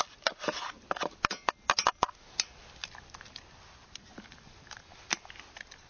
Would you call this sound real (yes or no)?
yes